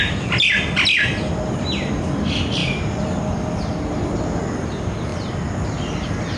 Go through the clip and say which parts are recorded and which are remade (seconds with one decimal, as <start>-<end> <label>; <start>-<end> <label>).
0.0-2.6 recorded; 2.6-3.2 remade; 3.2-6.4 recorded